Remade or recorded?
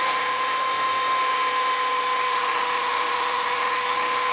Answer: remade